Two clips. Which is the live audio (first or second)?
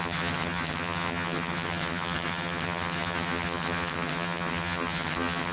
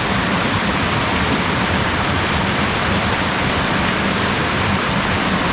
second